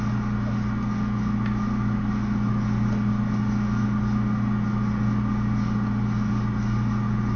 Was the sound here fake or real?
real